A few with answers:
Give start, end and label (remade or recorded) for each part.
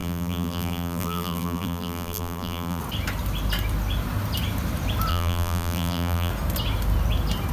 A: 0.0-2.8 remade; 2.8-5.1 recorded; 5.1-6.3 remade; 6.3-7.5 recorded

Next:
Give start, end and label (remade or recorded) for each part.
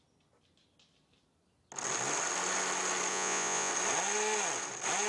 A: 0.0-3.1 recorded; 3.1-3.7 remade; 3.7-5.1 recorded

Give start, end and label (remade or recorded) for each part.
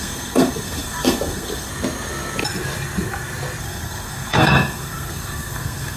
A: 0.0-1.7 remade; 1.7-3.6 recorded; 3.6-6.0 remade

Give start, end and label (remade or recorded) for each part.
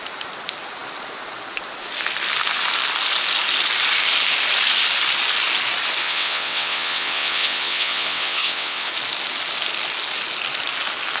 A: 0.0-6.0 recorded; 6.0-8.9 remade; 8.9-11.2 recorded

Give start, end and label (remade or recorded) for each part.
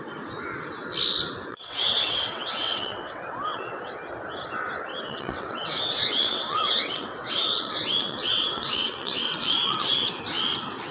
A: 0.0-1.5 recorded; 1.5-3.8 remade; 3.8-4.9 recorded; 4.9-10.1 remade; 10.1-10.9 recorded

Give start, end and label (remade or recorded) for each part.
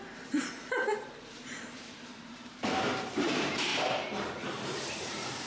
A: 0.0-5.5 remade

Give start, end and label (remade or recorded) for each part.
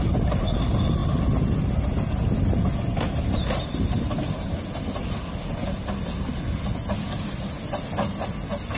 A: 0.0-8.8 recorded